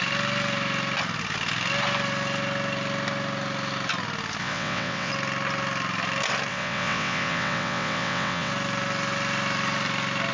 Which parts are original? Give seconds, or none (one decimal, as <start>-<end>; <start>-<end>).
0.0-4.4; 5.1-6.5; 8.5-10.3